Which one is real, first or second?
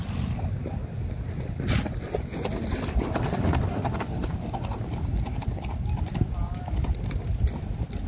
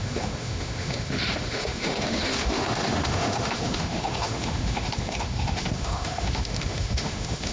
first